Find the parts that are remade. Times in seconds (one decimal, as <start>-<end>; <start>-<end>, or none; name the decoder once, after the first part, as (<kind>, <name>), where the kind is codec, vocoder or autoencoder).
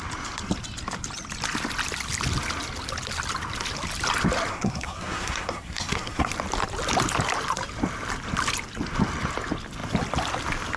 4.5-6.3 (codec, SNAC)